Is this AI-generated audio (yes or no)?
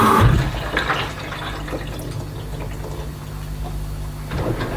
no